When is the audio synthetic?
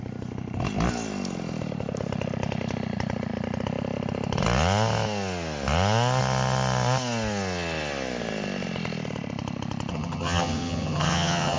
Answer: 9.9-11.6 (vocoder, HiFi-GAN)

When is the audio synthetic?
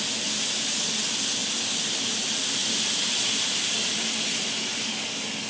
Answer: none